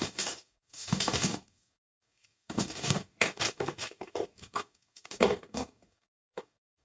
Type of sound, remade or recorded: remade